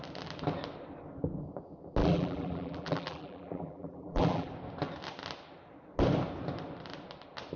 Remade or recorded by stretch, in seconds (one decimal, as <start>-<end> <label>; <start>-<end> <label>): 0.0-2.0 recorded; 2.0-4.5 remade; 4.5-7.6 recorded